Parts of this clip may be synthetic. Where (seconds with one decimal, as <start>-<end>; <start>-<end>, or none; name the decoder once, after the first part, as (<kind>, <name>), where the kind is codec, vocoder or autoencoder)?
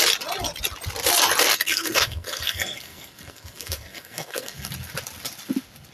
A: 1.5-4.7 (codec, SNAC)